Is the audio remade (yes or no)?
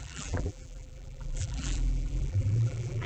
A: yes